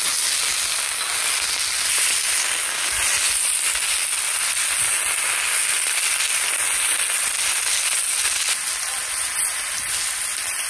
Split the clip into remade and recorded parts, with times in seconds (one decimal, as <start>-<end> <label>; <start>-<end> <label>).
0.0-10.7 recorded